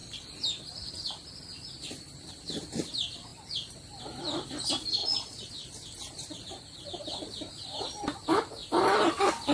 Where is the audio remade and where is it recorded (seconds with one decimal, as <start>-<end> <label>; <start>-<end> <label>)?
0.0-5.0 recorded; 5.0-5.5 remade; 5.5-9.5 recorded